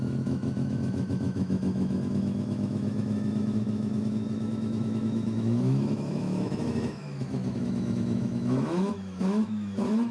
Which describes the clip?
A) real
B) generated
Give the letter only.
B